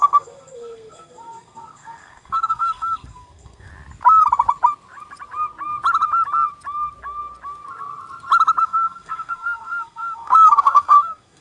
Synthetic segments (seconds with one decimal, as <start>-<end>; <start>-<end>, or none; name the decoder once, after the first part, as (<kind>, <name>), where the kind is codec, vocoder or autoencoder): 0.0-3.7 (codec, SNAC); 8.6-11.4